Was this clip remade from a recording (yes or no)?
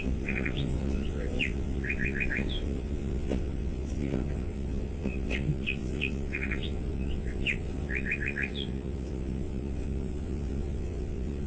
yes